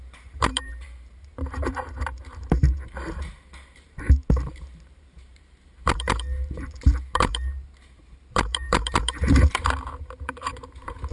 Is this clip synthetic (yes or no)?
yes